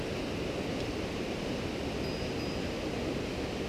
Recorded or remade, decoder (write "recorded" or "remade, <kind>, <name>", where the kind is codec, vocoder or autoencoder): recorded